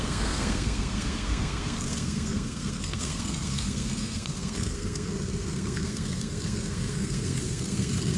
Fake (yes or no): yes